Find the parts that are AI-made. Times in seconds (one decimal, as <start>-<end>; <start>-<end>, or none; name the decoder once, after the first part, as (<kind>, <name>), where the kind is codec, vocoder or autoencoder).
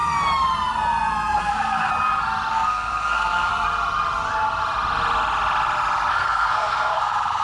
1.4-1.9 (codec, SNAC); 2.5-3.5; 6.1-7.4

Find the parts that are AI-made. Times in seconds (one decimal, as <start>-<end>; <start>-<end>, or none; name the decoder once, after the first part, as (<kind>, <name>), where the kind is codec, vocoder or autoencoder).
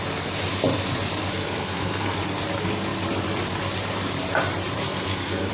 1.3-2.1 (codec, SNAC); 4.8-5.5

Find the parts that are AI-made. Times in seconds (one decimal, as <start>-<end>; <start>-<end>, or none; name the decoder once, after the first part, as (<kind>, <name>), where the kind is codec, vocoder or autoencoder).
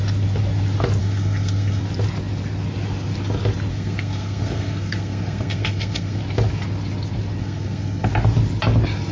1.0-1.8 (codec, SNAC); 3.7-6.2; 7.4-8.1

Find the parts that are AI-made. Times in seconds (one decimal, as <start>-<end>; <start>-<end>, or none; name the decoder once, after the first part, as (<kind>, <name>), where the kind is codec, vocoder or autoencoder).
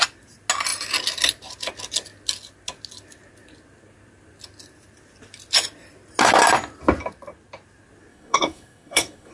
8.1-9.3 (codec, SNAC)